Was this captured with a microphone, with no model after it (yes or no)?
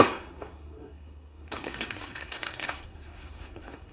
no